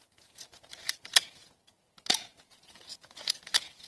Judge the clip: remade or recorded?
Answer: remade